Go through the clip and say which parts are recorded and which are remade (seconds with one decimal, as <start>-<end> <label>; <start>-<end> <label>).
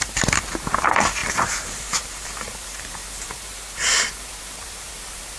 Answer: 0.0-5.4 remade